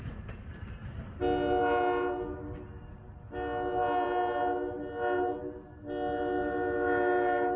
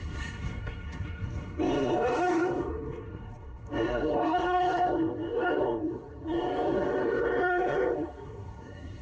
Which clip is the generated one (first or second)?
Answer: second